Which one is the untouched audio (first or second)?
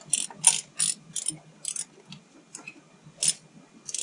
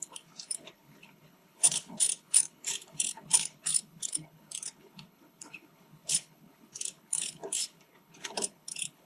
first